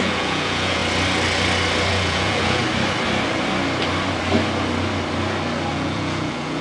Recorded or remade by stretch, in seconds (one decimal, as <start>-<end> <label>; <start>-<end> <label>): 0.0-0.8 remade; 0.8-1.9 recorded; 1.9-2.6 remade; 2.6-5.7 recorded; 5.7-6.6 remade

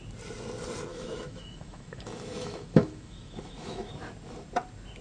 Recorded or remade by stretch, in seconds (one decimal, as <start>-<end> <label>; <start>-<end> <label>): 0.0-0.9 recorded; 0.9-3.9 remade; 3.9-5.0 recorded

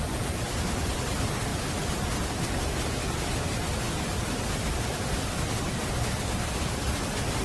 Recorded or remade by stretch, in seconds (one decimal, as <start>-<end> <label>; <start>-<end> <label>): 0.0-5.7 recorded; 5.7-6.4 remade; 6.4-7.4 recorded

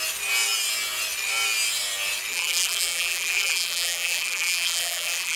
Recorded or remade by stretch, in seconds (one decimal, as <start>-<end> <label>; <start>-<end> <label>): 0.0-2.3 recorded; 2.3-5.4 remade

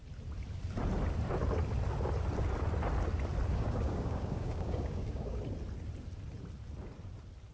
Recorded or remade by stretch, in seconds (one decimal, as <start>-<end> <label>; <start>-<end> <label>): 0.0-3.5 recorded; 3.5-5.4 remade; 5.4-7.5 recorded